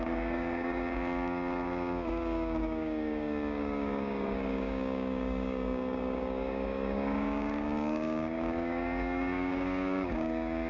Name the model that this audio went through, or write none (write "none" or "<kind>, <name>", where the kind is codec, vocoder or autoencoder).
codec, DAC